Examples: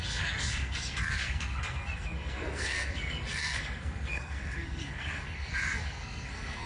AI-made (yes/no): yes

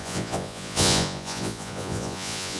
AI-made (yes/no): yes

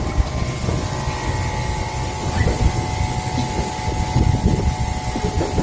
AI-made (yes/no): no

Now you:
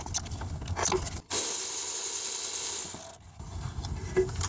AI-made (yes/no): no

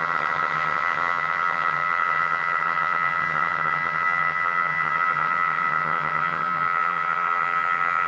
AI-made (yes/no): yes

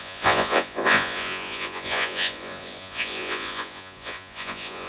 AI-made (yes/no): yes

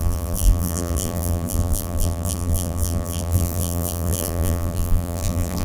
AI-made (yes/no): yes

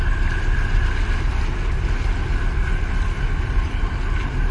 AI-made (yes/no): no